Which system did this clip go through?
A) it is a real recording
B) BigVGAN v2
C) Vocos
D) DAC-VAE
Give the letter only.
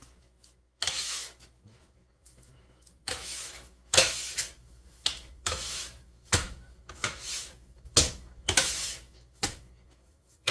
D